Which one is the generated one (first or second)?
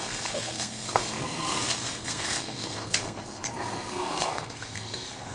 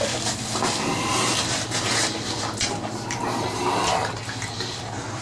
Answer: first